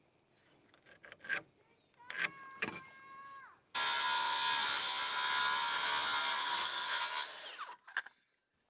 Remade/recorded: recorded